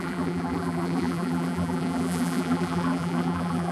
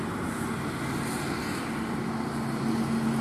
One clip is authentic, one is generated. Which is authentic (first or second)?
second